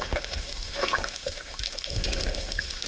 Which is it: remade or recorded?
remade